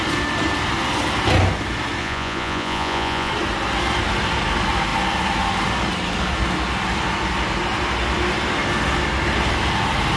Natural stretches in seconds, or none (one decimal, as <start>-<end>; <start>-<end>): 0.0-2.0; 3.3-10.2